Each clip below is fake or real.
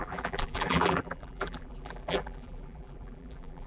fake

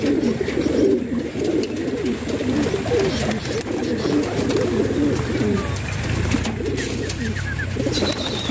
real